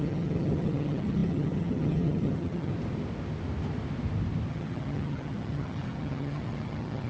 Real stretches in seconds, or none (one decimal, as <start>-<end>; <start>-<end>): 2.7-4.5